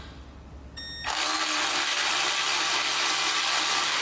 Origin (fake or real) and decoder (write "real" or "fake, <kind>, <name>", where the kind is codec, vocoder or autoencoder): real